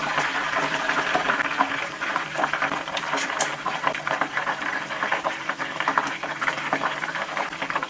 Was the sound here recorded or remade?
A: recorded